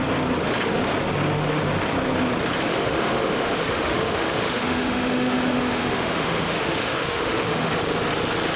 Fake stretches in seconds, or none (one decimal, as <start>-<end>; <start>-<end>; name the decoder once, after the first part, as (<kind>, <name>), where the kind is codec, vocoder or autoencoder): 2.7-7.7 (autoencoder, DAC-VAE)